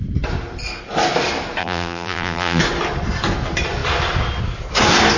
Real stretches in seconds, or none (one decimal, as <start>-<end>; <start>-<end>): 0.0-1.6; 2.6-5.2